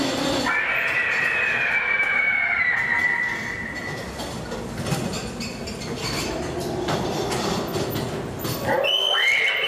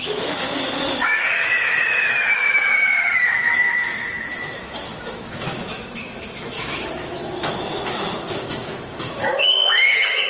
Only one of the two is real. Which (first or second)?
first